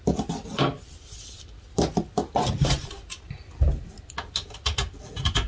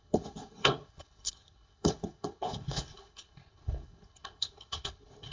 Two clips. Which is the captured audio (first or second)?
first